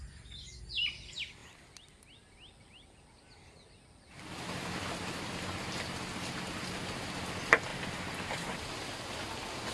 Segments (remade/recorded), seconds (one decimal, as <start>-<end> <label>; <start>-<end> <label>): 0.0-9.7 recorded